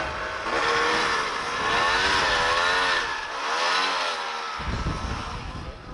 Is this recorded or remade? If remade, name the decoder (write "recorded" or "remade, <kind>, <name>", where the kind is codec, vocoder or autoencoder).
recorded